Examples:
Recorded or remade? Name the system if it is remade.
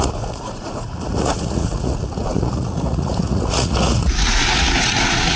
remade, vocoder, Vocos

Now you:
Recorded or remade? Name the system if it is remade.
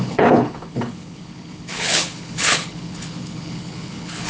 remade, codec, HILCodec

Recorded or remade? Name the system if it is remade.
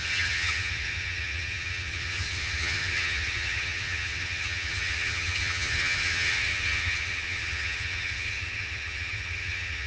remade, vocoder, HiFi-GAN